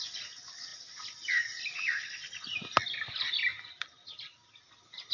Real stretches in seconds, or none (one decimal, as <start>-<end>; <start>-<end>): 0.0-5.1